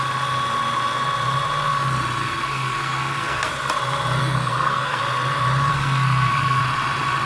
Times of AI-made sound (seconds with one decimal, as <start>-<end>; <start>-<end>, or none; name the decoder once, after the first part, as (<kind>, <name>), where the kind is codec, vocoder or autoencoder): 2.2-3.5 (codec, SNAC); 4.2-5.0; 5.7-6.6